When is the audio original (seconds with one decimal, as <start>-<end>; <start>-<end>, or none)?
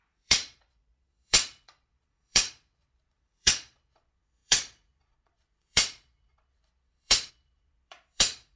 none